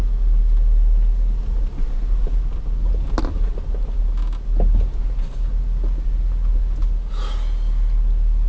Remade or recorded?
recorded